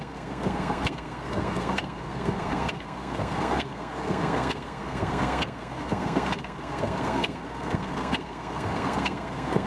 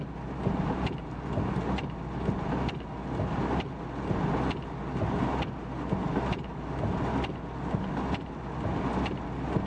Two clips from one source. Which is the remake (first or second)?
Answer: first